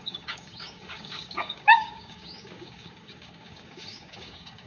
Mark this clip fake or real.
fake